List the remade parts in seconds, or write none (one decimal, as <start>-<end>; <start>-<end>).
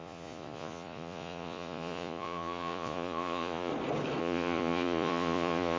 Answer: 0.0-3.7; 4.2-5.8